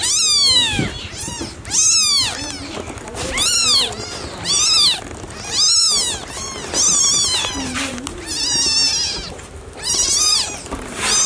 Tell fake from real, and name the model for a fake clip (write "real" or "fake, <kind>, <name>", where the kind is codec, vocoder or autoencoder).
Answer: real